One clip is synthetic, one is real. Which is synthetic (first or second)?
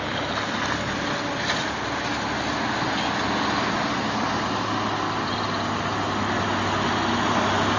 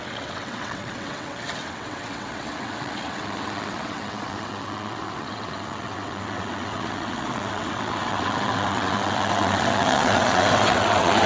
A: second